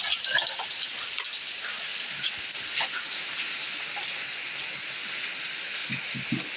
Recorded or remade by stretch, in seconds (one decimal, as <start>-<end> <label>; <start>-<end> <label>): 0.0-6.6 recorded